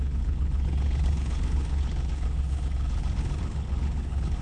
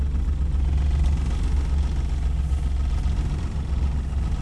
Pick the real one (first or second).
second